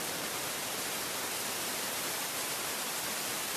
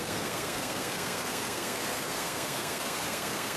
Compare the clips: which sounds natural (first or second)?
first